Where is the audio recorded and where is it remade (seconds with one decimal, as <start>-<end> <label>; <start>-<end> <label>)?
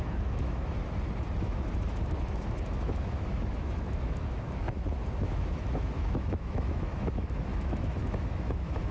0.0-0.8 remade; 0.8-1.4 recorded; 1.4-8.9 remade